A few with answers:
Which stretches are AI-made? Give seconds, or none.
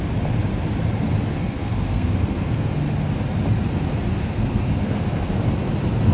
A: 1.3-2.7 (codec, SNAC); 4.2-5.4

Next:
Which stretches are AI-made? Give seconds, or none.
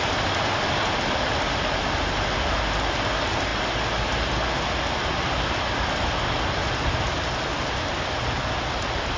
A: none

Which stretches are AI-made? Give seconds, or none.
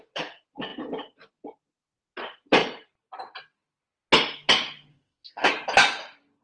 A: 4.9-5.5 (codec, SNAC)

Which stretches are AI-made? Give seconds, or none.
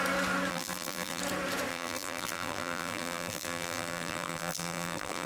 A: 0.5-1.2 (vocoder, BigVGAN v2); 1.7-5.3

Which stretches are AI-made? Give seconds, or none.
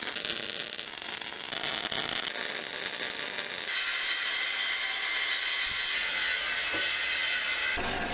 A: none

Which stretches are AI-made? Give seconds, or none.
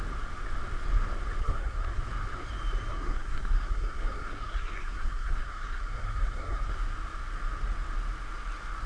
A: 1.4-2.0 (codec, SNAC); 2.9-6.7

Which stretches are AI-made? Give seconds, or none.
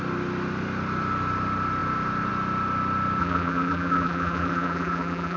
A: 3.2-5.4 (vocoder, BigVGAN v2)